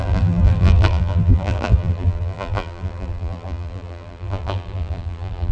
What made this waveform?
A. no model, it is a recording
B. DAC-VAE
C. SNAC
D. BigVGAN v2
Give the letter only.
D